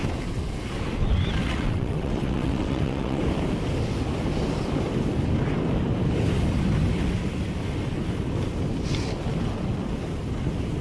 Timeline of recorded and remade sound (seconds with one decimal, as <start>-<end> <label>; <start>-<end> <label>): 0.0-1.4 recorded; 1.4-3.2 remade; 3.2-10.8 recorded